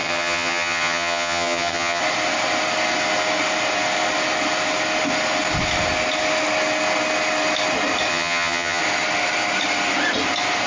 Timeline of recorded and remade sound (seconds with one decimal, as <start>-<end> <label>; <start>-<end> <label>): 0.0-2.0 remade; 2.0-8.1 recorded; 8.1-8.8 remade; 8.8-10.7 recorded